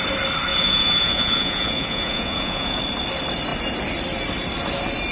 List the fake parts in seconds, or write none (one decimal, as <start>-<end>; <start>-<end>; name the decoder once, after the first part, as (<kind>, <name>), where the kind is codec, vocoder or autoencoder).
0.5-2.8 (vocoder, Vocos)